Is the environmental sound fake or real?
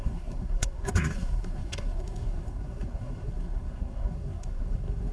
fake